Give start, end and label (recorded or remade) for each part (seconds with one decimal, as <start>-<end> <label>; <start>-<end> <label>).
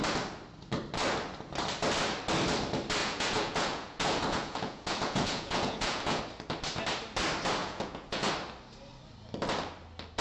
0.0-3.0 recorded; 3.0-6.2 remade; 6.2-7.6 recorded; 7.6-8.3 remade; 8.3-10.2 recorded